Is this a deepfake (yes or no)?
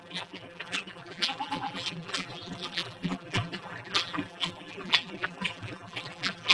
yes